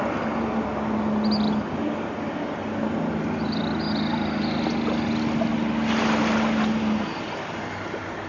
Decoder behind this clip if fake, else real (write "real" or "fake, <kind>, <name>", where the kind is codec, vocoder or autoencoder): real